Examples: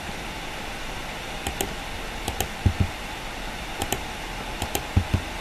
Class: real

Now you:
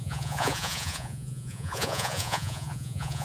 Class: fake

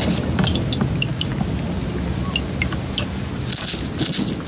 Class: real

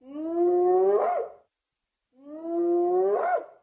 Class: real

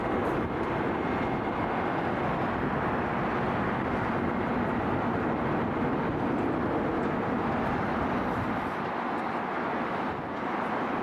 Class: real